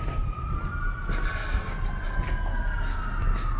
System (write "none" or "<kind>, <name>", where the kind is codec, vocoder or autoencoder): none